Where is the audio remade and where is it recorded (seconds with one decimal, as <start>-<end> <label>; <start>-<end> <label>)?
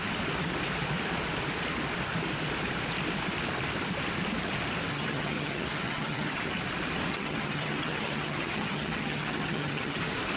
0.0-4.9 recorded; 4.9-6.5 remade; 6.5-7.1 recorded; 7.1-10.0 remade; 10.0-10.4 recorded